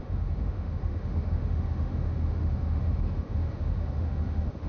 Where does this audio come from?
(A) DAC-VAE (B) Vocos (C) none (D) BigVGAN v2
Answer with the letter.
A